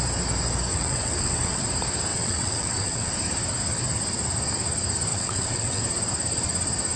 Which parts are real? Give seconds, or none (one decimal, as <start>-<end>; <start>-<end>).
0.0-0.7; 1.6-2.1; 3.1-5.1; 5.8-7.0